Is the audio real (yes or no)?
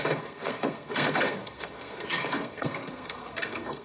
no